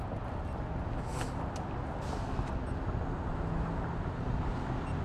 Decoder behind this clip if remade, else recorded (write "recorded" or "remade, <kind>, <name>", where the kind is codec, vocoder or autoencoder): recorded